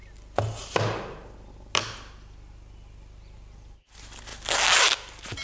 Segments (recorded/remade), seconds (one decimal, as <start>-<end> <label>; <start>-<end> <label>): 0.0-5.4 recorded